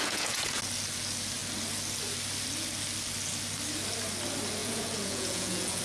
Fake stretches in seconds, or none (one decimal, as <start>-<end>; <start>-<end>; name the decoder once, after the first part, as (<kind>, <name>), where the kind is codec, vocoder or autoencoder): 0.0-0.6 (vocoder, Vocos); 4.6-5.8